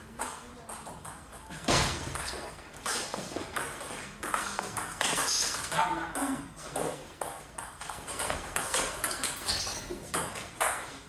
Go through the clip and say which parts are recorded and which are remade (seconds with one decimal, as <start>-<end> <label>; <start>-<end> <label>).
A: 0.0-0.5 remade; 0.5-1.0 recorded; 1.0-11.1 remade

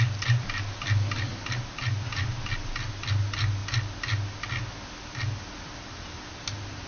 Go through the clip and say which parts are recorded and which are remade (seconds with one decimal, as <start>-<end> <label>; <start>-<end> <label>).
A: 0.0-6.9 recorded

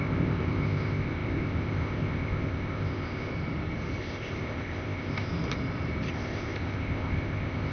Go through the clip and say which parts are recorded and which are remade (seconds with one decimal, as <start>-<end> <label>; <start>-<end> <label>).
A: 0.0-3.3 remade; 3.3-4.0 recorded; 4.0-5.3 remade; 5.3-6.1 recorded; 6.1-7.7 remade